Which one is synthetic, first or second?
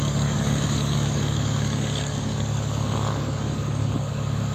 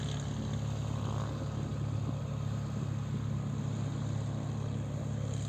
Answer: first